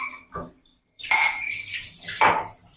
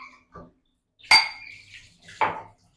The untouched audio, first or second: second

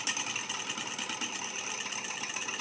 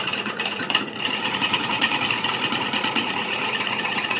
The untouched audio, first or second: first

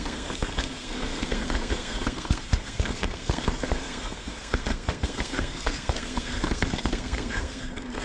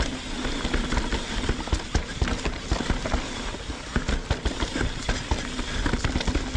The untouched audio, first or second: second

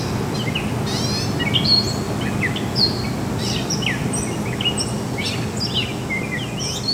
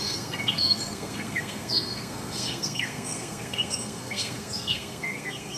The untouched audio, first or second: first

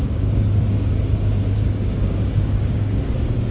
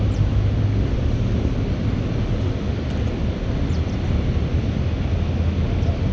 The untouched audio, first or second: second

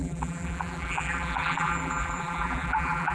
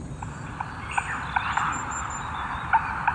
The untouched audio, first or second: second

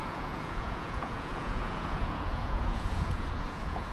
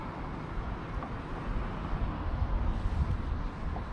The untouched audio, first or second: second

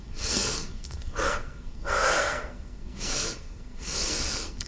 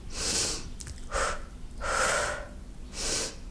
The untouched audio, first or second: second